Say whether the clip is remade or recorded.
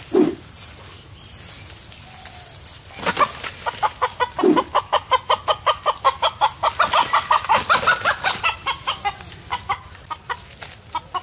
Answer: recorded